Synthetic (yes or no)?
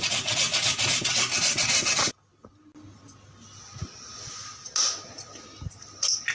no